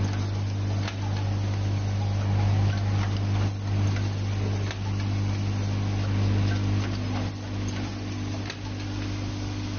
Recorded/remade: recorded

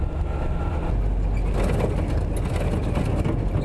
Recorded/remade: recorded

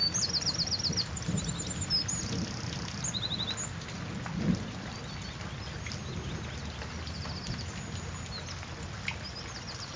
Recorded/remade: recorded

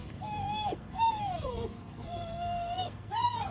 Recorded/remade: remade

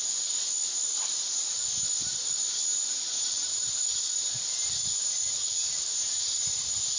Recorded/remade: recorded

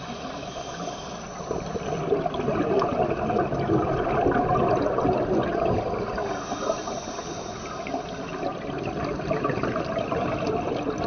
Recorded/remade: recorded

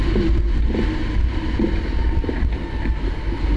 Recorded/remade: recorded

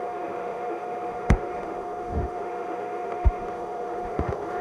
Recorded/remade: remade